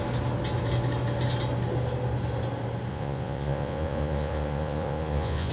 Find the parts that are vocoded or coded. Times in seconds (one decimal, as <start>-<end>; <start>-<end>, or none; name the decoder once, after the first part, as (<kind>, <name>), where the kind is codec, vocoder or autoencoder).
2.9-5.5 (vocoder, Vocos)